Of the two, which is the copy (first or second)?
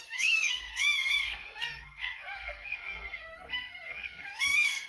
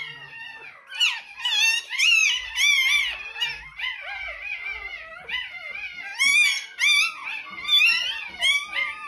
first